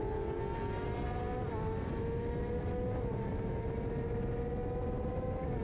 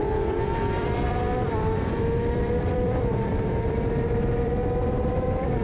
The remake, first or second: second